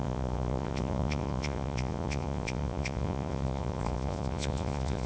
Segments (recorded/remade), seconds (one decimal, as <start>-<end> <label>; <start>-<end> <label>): 0.0-5.1 remade